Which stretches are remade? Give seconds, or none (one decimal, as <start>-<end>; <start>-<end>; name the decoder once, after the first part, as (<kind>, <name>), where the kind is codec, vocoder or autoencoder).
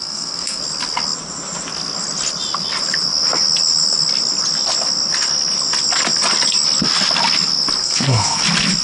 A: 0.0-0.6 (codec, SNAC); 7.8-8.4